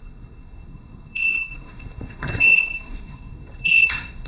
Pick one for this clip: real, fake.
fake